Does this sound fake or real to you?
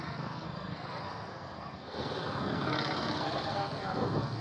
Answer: fake